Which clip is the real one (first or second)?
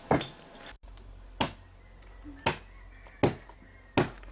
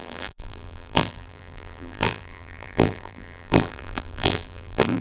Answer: first